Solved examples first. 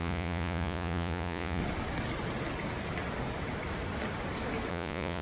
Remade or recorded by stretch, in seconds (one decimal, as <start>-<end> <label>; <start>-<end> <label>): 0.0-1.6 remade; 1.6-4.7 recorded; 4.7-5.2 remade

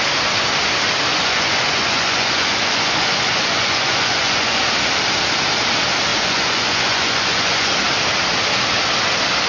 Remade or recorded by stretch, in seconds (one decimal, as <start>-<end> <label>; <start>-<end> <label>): 0.0-1.1 recorded; 1.1-4.6 remade; 4.6-6.1 recorded; 6.1-7.7 remade; 7.7-9.5 recorded

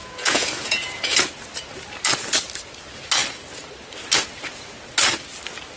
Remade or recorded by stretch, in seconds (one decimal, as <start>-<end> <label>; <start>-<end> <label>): 0.0-1.3 remade; 1.3-5.8 recorded

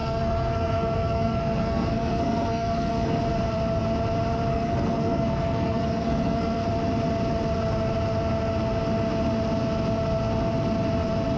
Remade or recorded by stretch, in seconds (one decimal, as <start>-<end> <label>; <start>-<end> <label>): 0.0-3.2 remade; 3.2-4.5 recorded; 4.5-6.7 remade; 6.7-11.4 recorded